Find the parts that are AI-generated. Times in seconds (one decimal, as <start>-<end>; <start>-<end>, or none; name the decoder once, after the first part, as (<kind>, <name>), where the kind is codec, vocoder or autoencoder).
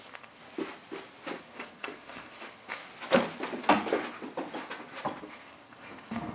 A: 0.0-0.4 (codec, SNAC); 1.4-2.8; 5.2-6.3